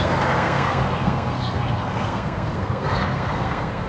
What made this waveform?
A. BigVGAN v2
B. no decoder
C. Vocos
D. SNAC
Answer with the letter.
D